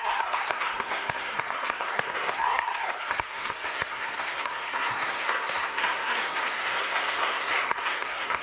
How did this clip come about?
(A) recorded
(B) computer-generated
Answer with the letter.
B